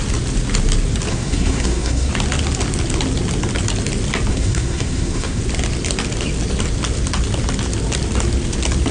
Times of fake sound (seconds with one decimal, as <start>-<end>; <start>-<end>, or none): 1.1-2.1; 4.3-5.4